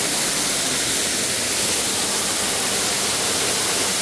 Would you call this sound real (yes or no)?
yes